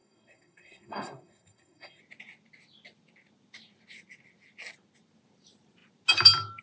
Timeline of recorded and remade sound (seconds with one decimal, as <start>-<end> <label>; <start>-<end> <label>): 0.0-2.0 remade; 2.0-6.6 recorded